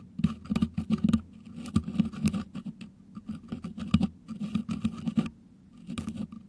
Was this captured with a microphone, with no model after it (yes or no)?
yes